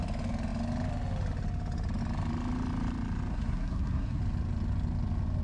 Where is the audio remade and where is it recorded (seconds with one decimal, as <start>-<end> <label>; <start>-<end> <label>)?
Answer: 0.0-3.3 recorded; 3.3-4.2 remade; 4.2-5.4 recorded

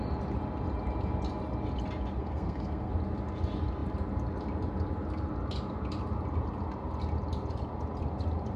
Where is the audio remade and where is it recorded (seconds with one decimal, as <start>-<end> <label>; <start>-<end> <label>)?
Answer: 0.0-2.2 recorded; 2.2-2.9 remade; 2.9-8.6 recorded

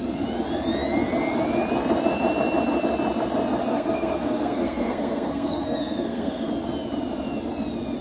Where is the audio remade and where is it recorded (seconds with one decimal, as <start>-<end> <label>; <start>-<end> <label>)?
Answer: 0.0-3.7 recorded; 3.7-6.5 remade; 6.5-8.0 recorded